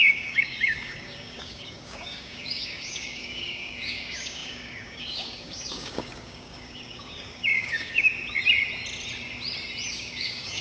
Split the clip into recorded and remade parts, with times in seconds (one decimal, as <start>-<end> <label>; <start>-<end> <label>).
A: 0.0-8.1 remade; 8.1-9.9 recorded; 9.9-10.6 remade

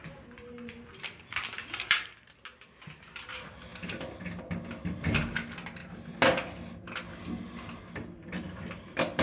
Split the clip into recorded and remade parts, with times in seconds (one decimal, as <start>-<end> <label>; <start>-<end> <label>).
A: 0.0-9.2 recorded

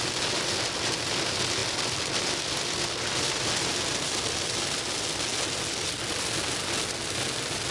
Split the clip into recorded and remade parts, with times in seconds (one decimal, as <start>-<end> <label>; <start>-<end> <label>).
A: 0.0-7.7 recorded